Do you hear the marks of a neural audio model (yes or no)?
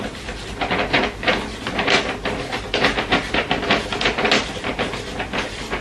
no